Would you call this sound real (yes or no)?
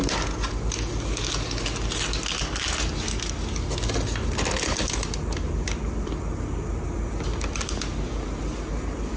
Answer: yes